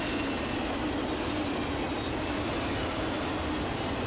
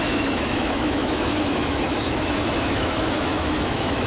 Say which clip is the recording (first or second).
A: first